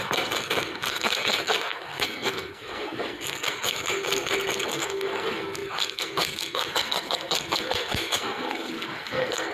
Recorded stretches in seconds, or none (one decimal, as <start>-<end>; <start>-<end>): none